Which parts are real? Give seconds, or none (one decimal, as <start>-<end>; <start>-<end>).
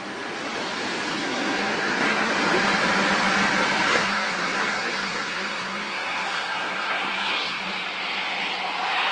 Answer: 0.0-1.1; 2.3-3.9; 7.6-9.1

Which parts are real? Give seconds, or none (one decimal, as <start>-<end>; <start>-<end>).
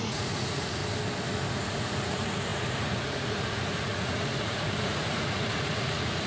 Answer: 0.8-1.5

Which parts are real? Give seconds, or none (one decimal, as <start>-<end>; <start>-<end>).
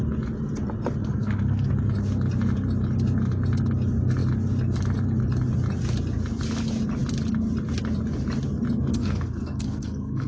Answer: 0.0-1.0; 1.7-8.9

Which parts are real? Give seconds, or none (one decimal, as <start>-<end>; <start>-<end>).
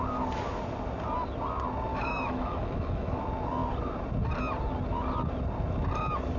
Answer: 0.0-1.9; 3.2-6.4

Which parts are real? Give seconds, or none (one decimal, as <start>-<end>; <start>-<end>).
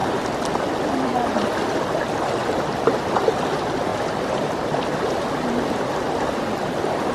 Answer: 0.0-3.9; 4.8-7.1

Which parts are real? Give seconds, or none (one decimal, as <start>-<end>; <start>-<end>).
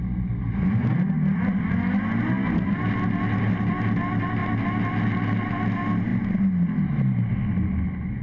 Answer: 0.0-8.2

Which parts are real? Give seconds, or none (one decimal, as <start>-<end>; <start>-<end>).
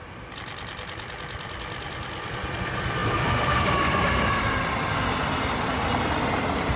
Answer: 0.0-6.8